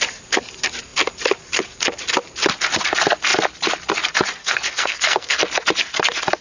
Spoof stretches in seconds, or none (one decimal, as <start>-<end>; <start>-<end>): 4.4-5.4